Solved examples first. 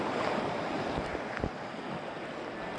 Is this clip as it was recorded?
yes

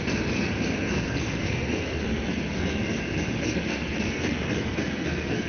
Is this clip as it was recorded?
no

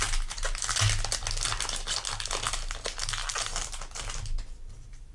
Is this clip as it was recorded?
yes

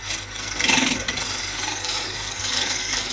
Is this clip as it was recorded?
no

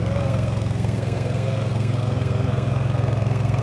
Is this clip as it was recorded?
no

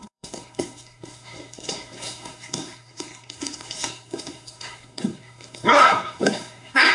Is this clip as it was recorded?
no